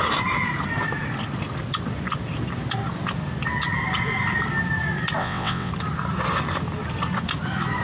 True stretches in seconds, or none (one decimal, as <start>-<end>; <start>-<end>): 0.0-5.2; 5.7-7.8